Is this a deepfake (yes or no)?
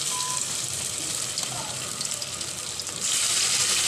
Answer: yes